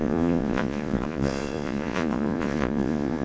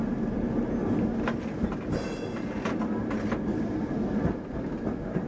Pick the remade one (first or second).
first